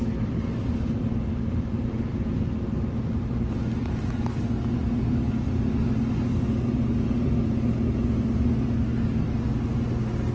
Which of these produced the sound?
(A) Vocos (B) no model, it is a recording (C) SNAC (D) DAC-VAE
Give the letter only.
B